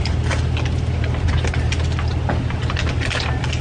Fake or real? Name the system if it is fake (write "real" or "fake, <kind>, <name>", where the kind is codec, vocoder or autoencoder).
real